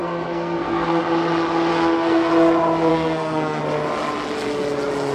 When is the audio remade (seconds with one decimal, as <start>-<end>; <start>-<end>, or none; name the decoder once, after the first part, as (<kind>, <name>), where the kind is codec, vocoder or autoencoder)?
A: 0.0-1.0 (codec, SNAC); 1.7-2.3; 2.9-3.6